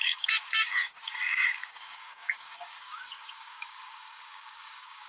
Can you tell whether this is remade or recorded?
remade